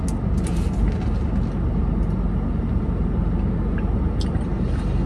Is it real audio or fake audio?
real